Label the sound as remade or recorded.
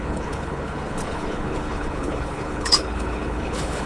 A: remade